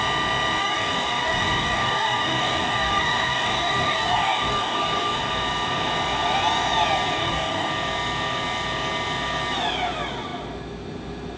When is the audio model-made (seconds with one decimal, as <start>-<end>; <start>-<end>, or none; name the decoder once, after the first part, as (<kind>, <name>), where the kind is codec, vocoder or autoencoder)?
0.6-5.3 (codec, DAC); 7.2-7.7